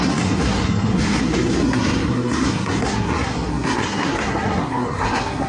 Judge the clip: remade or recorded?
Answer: remade